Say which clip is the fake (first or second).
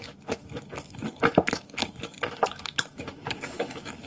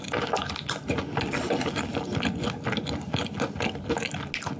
first